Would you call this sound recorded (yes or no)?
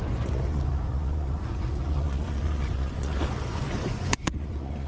no